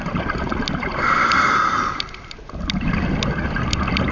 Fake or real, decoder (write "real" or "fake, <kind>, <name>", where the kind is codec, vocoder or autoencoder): fake, vocoder, BigVGAN v2